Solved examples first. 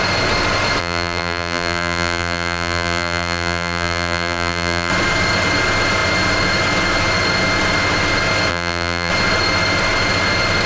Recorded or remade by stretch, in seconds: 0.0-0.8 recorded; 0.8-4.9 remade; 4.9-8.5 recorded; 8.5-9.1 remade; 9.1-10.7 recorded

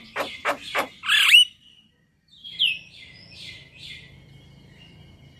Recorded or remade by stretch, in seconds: 0.0-5.4 remade

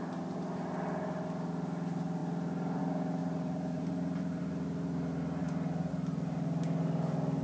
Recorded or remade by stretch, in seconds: 0.0-3.2 recorded; 3.2-4.4 remade; 4.4-5.4 recorded; 5.4-5.9 remade; 5.9-7.4 recorded